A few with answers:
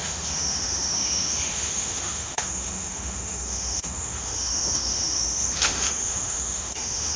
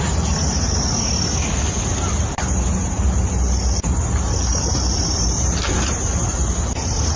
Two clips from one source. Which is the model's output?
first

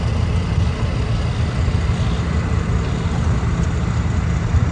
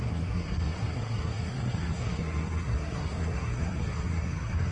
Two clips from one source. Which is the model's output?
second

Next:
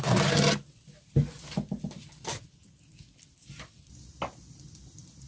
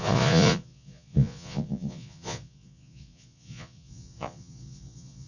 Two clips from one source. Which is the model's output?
second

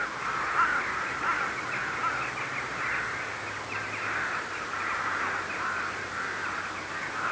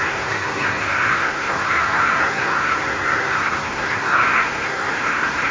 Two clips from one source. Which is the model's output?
second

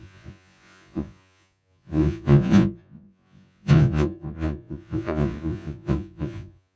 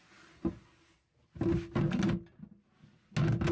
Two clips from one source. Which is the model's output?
first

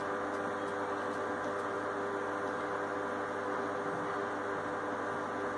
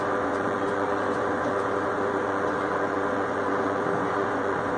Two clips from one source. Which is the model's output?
second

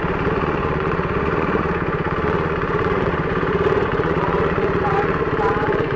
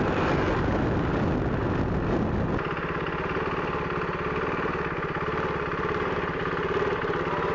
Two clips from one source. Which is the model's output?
first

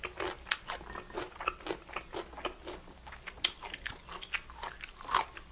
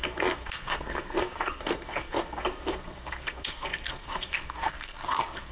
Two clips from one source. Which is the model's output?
second